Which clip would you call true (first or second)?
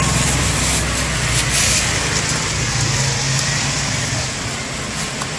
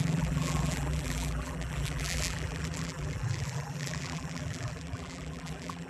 first